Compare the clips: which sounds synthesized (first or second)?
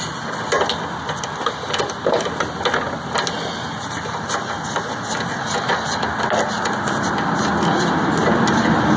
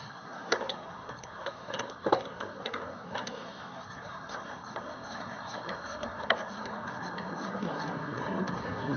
second